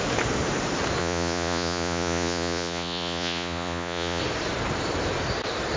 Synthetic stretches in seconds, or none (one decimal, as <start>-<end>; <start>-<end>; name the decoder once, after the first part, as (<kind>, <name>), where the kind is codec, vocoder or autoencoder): 1.0-4.2 (vocoder, Vocos)